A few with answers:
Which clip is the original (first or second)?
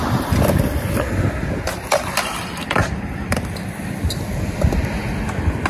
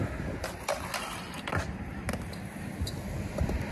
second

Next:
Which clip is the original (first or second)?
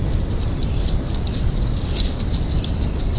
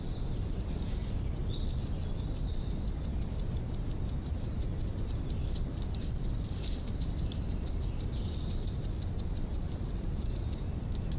first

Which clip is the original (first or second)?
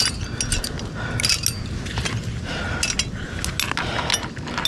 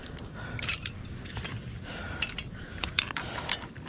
first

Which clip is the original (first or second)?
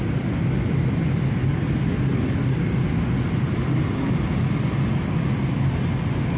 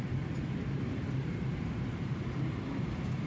first